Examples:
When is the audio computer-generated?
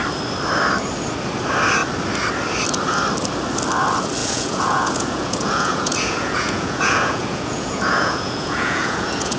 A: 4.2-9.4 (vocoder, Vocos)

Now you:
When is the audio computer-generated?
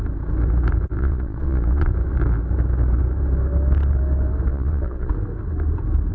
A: 1.0-1.9 (vocoder, Vocos); 4.5-5.1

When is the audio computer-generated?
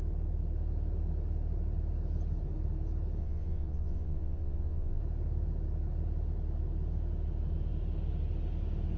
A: 3.2-5.0 (vocoder, Vocos)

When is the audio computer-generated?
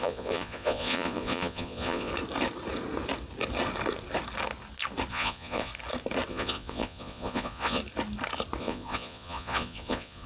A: 0.0-2.1 (vocoder, Vocos); 5.1-5.7; 6.3-7.8; 8.6-10.3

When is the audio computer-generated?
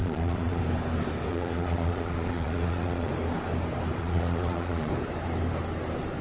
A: 0.0-0.6 (vocoder, Vocos); 1.3-3.1; 4.0-4.9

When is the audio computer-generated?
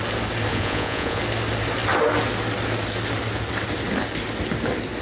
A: 0.5-1.2 (vocoder, Vocos)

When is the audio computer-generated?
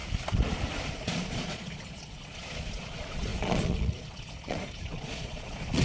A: 0.9-5.8 (vocoder, Vocos)